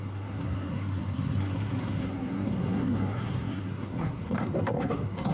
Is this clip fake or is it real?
fake